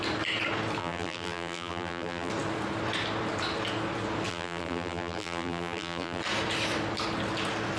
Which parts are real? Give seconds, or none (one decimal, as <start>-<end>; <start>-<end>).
0.0-0.8; 2.3-4.3; 6.2-7.8